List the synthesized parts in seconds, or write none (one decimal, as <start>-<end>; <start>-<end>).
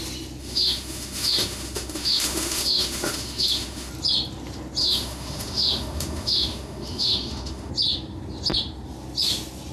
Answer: 0.4-3.9; 4.8-7.7